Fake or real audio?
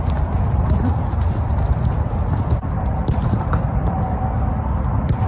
fake